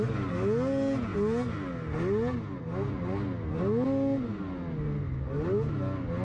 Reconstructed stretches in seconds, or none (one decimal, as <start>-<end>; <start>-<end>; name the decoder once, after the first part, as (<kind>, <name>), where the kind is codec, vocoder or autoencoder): none